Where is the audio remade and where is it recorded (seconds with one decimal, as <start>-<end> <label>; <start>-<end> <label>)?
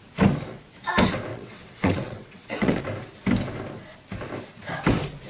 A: 0.0-1.3 recorded; 1.3-2.8 remade; 2.8-5.3 recorded